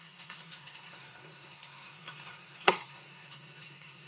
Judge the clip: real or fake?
fake